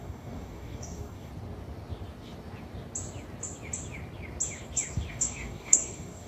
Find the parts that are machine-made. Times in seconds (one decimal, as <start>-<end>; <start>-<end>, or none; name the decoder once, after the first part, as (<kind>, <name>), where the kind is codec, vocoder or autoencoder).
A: 0.0-1.3 (codec, DAC); 5.1-6.3